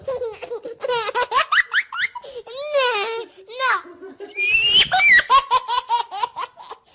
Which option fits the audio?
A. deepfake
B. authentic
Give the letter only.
B